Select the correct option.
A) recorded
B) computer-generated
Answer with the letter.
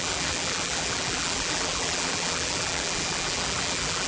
B